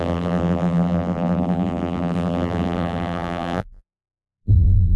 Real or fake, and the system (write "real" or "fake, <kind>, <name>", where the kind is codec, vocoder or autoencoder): fake, vocoder, BigVGAN v2